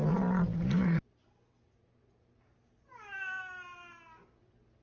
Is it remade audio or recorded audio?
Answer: recorded